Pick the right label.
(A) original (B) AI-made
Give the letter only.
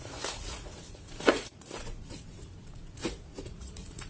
B